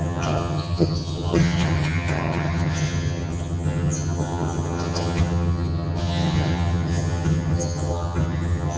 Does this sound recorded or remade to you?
remade